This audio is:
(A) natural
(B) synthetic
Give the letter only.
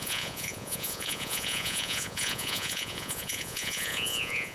B